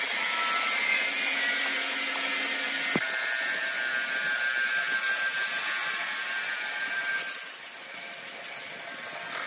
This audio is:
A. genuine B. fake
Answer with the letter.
A